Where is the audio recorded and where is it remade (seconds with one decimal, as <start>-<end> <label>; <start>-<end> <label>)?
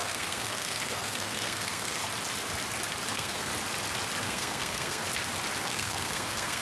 0.0-2.0 remade; 2.0-3.1 recorded; 3.1-3.5 remade; 3.5-4.2 recorded; 4.2-5.0 remade; 5.0-5.6 recorded; 5.6-6.6 remade